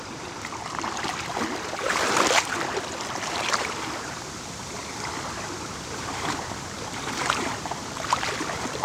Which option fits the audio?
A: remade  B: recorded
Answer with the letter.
A